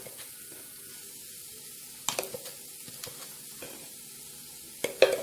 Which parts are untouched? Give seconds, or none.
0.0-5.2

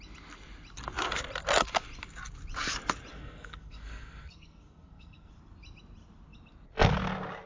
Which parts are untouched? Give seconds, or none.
0.0-3.1; 5.3-7.5

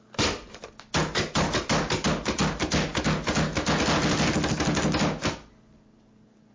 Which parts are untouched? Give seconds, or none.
0.0-6.5

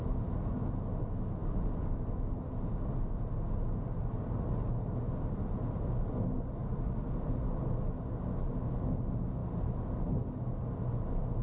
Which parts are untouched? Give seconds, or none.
0.0-1.4; 2.1-6.6; 7.3-11.4